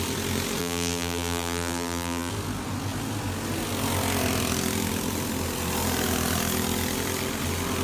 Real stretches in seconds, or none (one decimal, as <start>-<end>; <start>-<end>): 0.0-0.6; 2.3-7.8